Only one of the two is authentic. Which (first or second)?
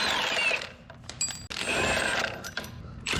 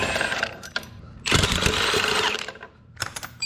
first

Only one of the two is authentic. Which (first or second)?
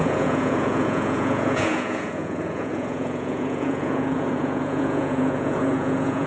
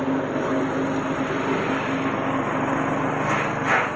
second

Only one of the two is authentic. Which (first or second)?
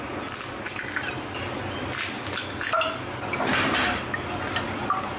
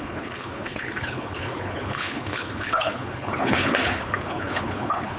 first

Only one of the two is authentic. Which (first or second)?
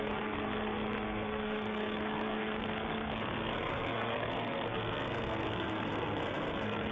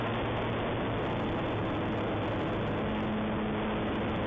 second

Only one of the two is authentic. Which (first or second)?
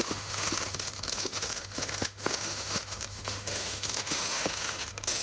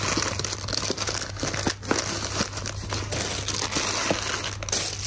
second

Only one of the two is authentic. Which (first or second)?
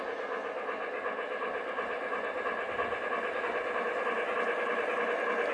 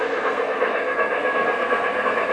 first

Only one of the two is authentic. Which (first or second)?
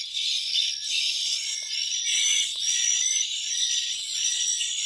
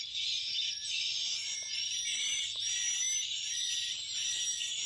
second